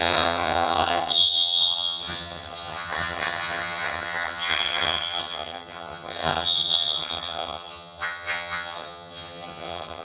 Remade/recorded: remade